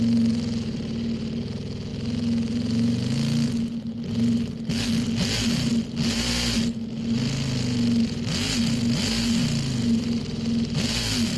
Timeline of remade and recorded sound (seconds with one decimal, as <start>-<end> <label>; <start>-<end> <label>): 0.0-11.4 recorded